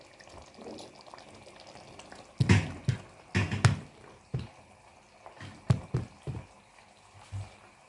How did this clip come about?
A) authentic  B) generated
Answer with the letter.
A